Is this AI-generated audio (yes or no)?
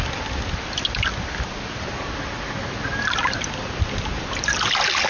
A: no